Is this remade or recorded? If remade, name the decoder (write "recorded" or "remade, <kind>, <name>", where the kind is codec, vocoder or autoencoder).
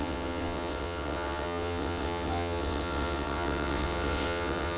remade, vocoder, WaveNeXt